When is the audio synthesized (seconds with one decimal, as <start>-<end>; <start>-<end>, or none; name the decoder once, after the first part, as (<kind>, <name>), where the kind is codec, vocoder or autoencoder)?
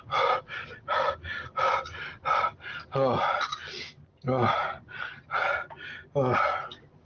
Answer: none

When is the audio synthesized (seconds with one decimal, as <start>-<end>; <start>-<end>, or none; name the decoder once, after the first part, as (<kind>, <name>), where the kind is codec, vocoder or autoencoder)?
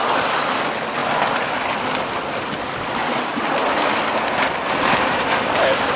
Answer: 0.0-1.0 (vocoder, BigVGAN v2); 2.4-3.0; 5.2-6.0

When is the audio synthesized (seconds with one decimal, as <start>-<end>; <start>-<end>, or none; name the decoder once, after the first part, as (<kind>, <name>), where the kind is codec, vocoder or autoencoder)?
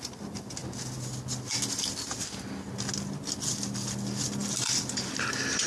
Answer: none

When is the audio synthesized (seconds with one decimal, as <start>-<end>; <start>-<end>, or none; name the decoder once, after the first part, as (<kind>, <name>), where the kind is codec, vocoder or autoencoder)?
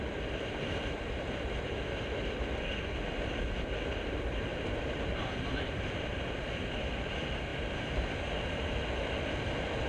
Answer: 4.5-6.6 (vocoder, BigVGAN v2)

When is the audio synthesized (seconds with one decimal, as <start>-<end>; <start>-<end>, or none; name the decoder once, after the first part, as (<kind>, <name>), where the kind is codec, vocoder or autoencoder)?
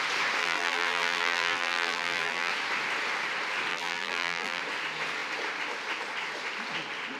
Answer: 0.4-2.5 (vocoder, BigVGAN v2); 3.7-4.6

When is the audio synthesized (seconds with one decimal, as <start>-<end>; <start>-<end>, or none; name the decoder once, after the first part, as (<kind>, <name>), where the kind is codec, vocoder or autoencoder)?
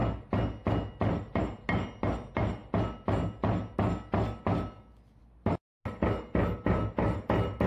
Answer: none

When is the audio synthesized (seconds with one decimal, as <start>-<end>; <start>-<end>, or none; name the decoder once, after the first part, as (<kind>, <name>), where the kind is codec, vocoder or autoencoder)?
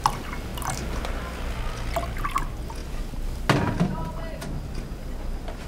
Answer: none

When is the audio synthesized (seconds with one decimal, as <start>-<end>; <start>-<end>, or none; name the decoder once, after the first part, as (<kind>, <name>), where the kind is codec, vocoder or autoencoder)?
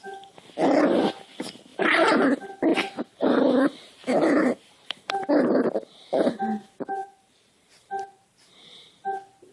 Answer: 1.7-2.2 (vocoder, BigVGAN v2); 2.7-5.3; 7.0-8.5